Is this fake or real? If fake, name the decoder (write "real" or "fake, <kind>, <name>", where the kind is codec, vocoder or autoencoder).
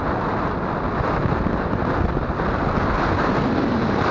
real